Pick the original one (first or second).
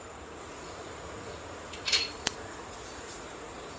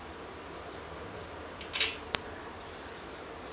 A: second